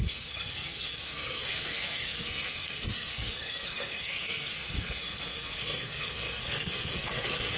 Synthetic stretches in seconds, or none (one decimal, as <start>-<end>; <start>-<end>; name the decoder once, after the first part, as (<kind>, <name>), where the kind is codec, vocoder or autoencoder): 0.0-7.6 (codec, SNAC)